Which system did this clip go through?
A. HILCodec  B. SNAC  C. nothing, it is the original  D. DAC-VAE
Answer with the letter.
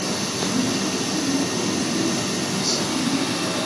C